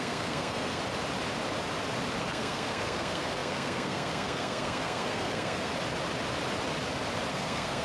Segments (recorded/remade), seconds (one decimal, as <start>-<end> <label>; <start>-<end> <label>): 0.0-0.8 remade; 0.8-2.2 recorded; 2.2-5.7 remade; 5.7-7.3 recorded; 7.3-7.8 remade